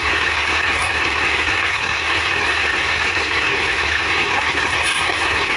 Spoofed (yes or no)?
yes